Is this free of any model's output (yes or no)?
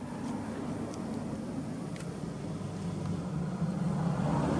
yes